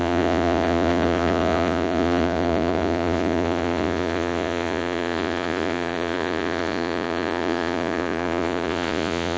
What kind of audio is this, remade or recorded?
remade